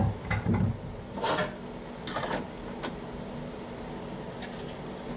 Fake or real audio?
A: real